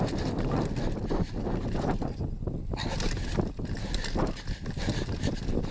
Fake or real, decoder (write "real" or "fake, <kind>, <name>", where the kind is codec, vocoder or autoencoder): real